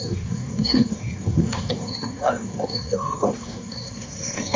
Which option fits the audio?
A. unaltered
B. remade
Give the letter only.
B